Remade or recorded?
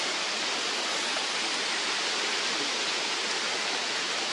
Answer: recorded